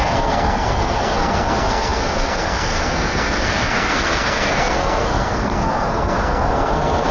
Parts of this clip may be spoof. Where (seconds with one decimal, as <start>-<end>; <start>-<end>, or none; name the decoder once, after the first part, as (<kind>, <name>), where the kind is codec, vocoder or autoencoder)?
0.0-7.1 (codec, SNAC)